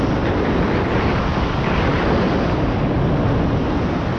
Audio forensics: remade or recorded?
recorded